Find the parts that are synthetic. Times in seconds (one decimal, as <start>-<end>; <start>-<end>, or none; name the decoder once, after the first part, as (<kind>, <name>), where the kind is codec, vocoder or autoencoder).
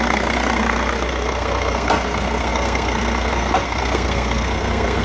0.0-5.0 (codec, SNAC)